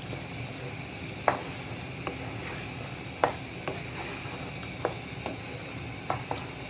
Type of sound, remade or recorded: recorded